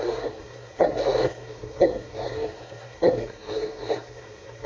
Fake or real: fake